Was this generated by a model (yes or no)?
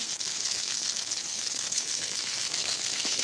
yes